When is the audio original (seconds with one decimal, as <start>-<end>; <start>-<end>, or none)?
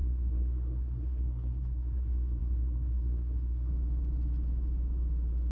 3.7-5.5